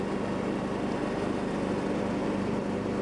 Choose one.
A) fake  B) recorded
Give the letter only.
A